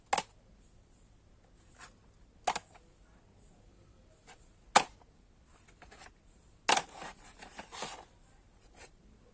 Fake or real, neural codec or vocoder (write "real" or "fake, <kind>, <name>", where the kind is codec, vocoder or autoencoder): real